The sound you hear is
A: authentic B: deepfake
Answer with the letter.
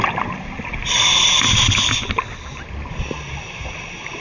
A